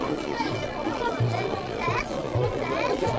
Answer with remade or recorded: remade